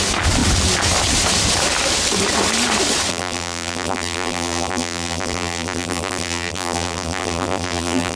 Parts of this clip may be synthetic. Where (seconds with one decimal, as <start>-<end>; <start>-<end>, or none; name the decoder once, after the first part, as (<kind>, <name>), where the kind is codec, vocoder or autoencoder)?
3.1-8.2 (vocoder, BigVGAN v2)